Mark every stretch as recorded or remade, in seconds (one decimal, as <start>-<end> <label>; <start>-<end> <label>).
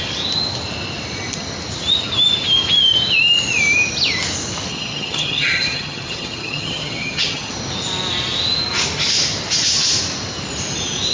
0.0-4.7 recorded; 4.7-7.5 remade; 7.5-11.1 recorded